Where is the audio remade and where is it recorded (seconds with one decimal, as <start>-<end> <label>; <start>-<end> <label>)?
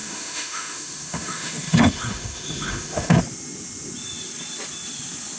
0.0-3.2 remade; 3.2-5.4 recorded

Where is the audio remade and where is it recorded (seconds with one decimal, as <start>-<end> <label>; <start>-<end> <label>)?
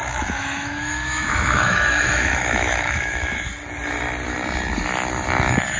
0.0-3.5 remade; 3.5-5.8 recorded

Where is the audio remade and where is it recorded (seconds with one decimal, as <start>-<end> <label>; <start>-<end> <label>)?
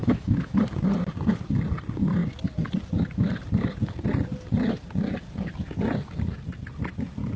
0.0-0.6 remade; 0.6-7.4 recorded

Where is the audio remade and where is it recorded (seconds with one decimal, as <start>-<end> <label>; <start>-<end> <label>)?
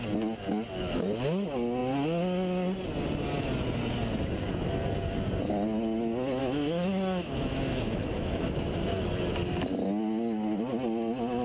0.0-6.4 recorded; 6.4-9.0 remade; 9.0-11.4 recorded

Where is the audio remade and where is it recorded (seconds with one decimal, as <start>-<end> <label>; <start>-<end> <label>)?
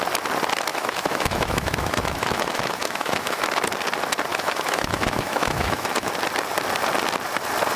0.0-0.7 recorded; 0.7-3.4 remade; 3.4-4.3 recorded; 4.3-6.1 remade; 6.1-7.8 recorded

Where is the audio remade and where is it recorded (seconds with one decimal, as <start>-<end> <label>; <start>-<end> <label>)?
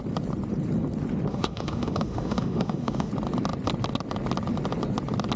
0.0-1.3 recorded; 1.3-3.1 remade; 3.1-5.4 recorded